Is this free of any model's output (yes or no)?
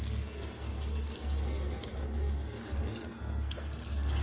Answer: no